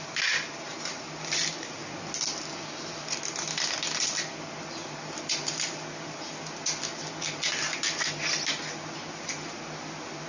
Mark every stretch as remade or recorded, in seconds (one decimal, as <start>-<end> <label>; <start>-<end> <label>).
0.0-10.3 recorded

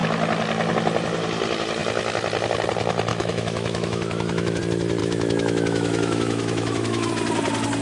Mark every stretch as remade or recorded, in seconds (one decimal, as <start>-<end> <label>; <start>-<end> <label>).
0.0-3.1 recorded; 3.1-4.6 remade; 4.6-5.0 recorded; 5.0-7.1 remade; 7.1-7.8 recorded

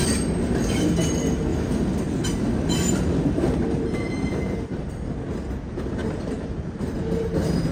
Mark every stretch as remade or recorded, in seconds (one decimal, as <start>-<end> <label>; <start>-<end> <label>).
0.0-1.5 recorded; 1.5-4.9 remade; 4.9-7.7 recorded